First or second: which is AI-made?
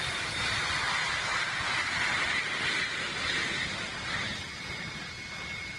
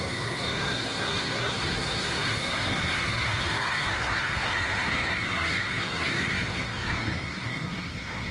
second